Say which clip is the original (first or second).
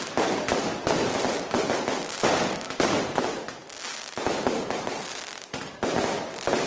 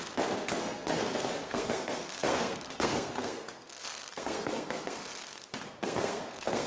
first